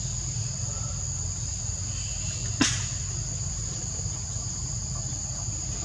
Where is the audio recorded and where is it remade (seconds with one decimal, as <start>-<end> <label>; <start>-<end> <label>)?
0.0-5.8 recorded